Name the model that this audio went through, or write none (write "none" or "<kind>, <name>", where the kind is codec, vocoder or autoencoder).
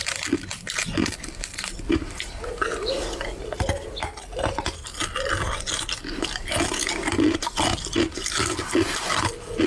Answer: none